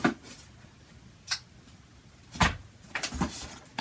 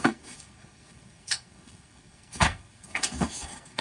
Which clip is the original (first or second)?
first